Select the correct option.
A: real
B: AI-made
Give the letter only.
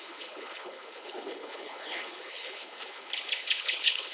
B